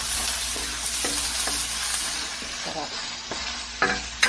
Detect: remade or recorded recorded